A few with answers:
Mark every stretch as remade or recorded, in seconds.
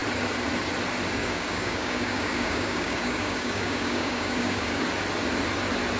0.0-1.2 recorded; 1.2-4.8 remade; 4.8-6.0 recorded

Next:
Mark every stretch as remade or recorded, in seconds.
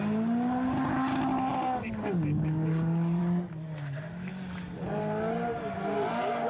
0.0-1.5 recorded; 1.5-3.2 remade; 3.2-6.5 recorded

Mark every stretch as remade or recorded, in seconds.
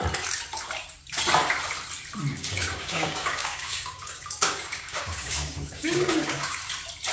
0.0-2.3 recorded; 2.3-6.6 remade; 6.6-7.1 recorded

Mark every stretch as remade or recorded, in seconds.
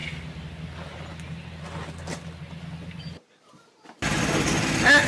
0.0-5.1 recorded